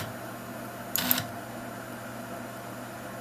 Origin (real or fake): real